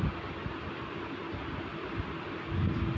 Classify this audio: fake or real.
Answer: real